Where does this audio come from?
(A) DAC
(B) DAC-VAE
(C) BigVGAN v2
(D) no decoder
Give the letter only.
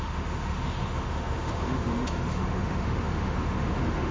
B